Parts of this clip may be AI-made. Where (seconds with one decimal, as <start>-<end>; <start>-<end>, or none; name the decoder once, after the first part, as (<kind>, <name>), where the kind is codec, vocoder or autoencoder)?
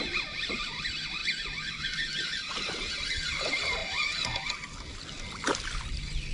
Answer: none